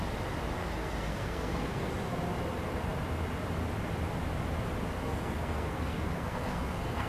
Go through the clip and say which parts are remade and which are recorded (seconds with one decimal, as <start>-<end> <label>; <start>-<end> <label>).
0.0-0.6 recorded; 0.6-1.9 remade; 1.9-5.0 recorded; 5.0-7.1 remade